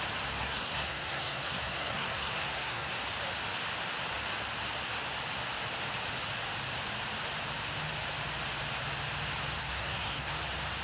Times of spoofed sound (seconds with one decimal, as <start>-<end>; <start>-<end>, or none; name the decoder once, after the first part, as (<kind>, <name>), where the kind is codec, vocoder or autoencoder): 0.4-2.9 (codec, SNAC); 9.6-10.3